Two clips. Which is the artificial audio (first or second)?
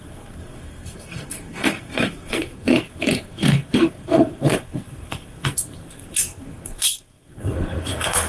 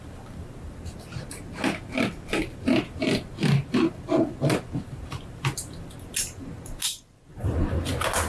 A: first